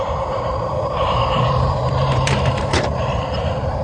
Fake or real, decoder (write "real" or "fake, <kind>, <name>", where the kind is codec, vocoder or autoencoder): fake, vocoder, BigVGAN v2